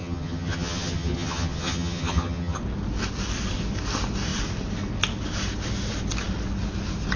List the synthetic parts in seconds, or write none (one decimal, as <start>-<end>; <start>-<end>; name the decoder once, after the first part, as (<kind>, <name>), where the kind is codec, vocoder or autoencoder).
0.0-2.6 (vocoder, HiFi-GAN)